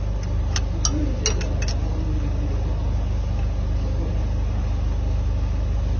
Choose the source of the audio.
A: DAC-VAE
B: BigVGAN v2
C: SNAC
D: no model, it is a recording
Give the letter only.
D